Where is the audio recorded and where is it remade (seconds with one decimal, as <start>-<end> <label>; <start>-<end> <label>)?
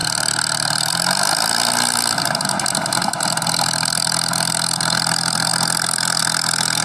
0.0-0.9 remade; 0.9-6.8 recorded